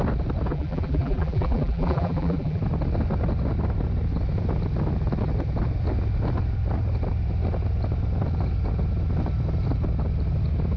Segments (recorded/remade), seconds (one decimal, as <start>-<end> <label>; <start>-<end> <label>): 0.0-0.5 recorded; 0.5-2.6 remade; 2.6-10.8 recorded